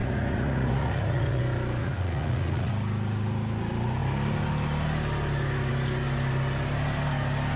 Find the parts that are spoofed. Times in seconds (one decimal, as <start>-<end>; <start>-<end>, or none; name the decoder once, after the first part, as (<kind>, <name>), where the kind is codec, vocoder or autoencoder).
0.0-1.4 (vocoder, Vocos); 1.8-2.7